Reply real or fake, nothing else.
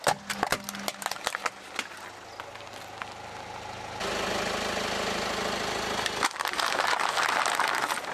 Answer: real